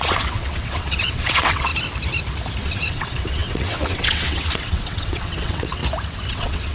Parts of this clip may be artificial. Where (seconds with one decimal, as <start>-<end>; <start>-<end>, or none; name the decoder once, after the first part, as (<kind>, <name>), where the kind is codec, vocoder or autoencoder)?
0.0-1.7 (vocoder, WaveNeXt); 2.6-5.8; 6.3-6.7